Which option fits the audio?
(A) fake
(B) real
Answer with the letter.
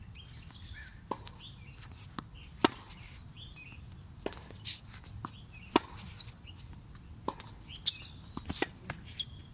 B